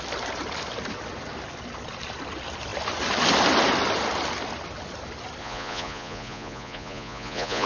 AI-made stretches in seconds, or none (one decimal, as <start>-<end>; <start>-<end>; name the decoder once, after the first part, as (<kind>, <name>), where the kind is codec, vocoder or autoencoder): 5.4-7.7 (vocoder, Vocos)